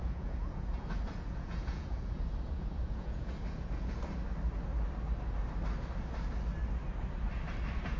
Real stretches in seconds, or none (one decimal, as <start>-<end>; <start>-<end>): 4.0-8.0